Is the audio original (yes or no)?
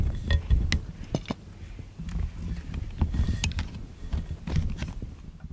yes